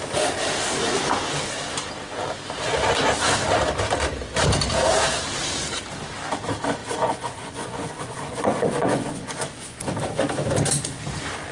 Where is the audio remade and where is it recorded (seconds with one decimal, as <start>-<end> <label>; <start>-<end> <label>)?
0.0-6.8 recorded; 6.8-9.9 remade; 9.9-11.5 recorded